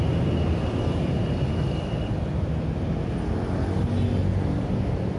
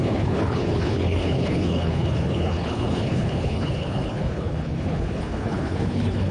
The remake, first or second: second